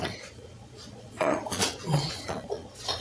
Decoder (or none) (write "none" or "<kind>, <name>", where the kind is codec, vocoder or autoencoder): vocoder, Vocos